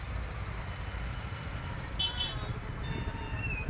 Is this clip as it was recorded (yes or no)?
yes